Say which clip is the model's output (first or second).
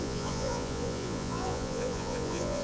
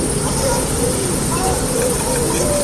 first